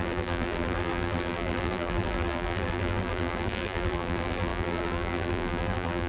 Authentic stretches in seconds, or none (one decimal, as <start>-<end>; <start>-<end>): none